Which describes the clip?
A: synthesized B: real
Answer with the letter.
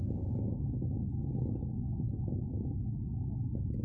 B